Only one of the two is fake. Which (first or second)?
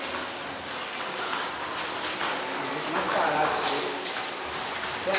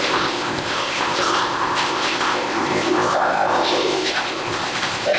second